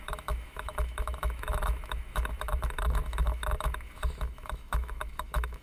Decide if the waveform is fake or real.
fake